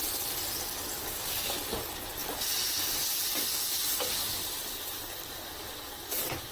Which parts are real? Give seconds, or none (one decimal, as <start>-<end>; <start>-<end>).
0.0-1.0; 1.5-6.5